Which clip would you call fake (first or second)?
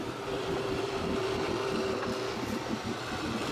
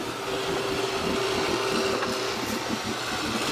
first